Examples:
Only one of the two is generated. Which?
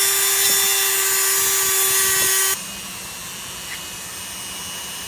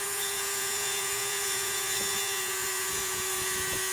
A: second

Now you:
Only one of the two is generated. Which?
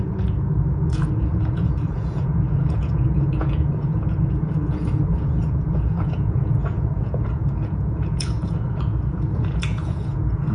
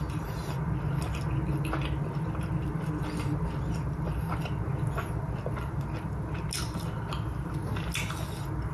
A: first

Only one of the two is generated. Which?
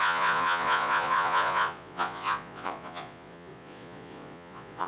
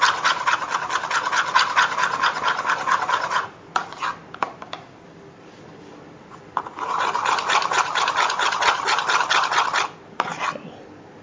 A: first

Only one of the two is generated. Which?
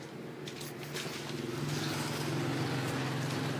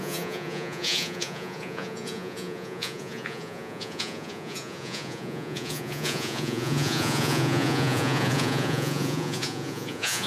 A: second